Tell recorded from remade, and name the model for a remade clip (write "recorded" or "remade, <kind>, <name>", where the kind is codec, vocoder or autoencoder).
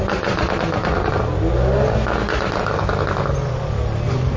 recorded